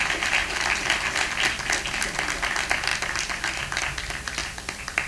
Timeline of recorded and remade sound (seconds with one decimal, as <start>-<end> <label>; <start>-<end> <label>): 0.0-0.4 recorded; 0.4-1.2 remade; 1.2-2.9 recorded; 2.9-3.8 remade; 3.8-4.4 recorded; 4.4-5.1 remade